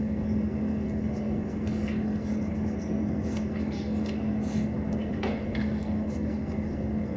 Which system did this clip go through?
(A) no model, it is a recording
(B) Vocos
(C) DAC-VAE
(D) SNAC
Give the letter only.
D